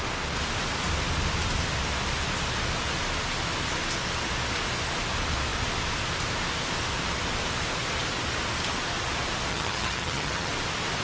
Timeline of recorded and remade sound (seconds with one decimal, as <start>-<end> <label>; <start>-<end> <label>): 0.0-9.5 recorded; 9.5-10.5 remade; 10.5-11.0 recorded